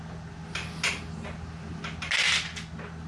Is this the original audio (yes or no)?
yes